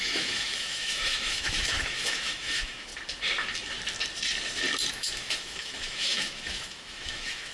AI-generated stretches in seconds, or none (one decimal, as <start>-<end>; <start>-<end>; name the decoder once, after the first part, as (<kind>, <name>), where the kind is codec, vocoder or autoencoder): 0.0-2.9 (autoencoder, DAC-VAE); 4.9-7.5